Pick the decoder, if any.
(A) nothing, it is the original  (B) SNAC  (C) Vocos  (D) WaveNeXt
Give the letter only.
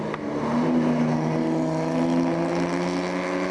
A